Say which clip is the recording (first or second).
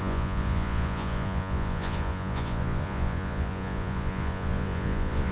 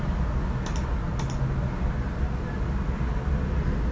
second